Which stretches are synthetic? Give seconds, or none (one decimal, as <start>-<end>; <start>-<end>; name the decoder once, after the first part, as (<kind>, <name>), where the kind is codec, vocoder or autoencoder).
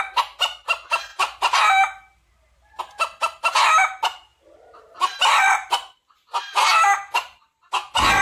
1.1-2.8 (vocoder, BigVGAN v2); 4.3-5.2; 6.3-7.6